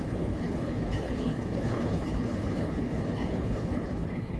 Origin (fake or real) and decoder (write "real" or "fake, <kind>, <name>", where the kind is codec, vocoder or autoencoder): fake, codec, HILCodec